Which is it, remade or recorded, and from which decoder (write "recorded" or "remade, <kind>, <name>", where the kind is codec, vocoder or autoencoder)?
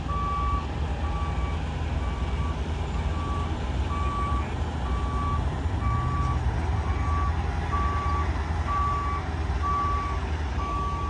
recorded